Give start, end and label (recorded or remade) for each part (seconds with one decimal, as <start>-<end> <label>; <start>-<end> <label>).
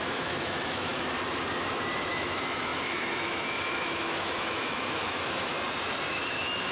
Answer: 0.0-0.9 remade; 0.9-2.1 recorded; 2.1-5.5 remade; 5.5-6.1 recorded; 6.1-6.7 remade